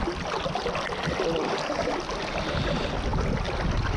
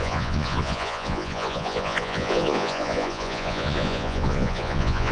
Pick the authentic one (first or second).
first